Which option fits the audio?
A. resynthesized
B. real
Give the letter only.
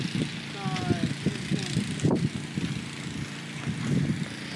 B